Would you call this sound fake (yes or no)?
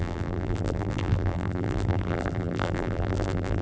yes